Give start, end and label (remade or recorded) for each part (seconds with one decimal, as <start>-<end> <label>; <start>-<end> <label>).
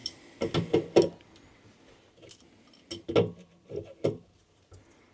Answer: 0.0-5.1 recorded